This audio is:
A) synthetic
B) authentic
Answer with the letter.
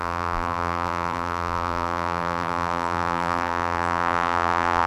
A